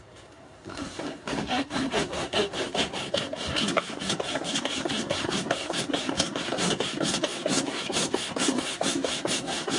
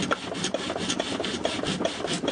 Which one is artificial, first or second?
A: first